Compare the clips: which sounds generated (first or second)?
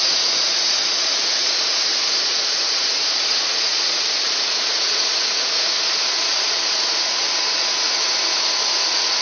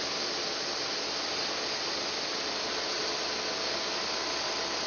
first